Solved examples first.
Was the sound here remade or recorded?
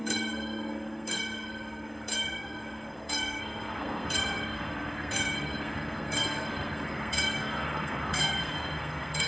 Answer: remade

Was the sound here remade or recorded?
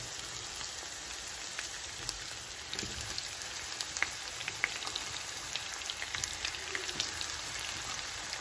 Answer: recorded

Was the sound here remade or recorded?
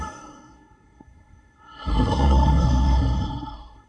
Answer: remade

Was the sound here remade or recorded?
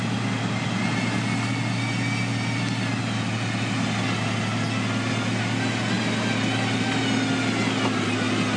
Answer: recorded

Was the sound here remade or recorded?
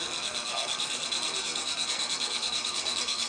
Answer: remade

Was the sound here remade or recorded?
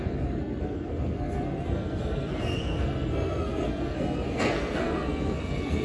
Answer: remade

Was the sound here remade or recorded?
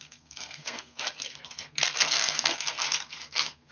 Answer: remade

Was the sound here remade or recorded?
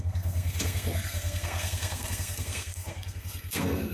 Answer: remade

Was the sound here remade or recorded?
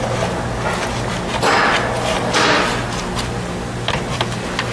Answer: recorded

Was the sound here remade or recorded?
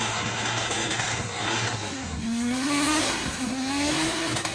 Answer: remade